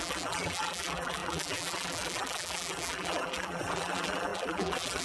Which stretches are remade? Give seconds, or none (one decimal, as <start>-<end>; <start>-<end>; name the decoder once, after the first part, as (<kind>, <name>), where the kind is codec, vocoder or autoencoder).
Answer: 0.0-5.0 (vocoder, BigVGAN v2)